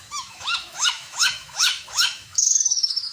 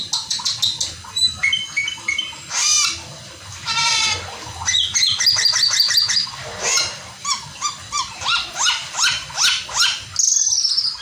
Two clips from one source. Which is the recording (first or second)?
second